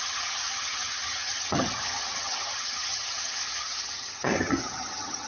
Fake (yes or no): yes